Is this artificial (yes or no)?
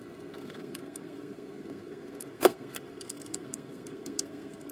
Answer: yes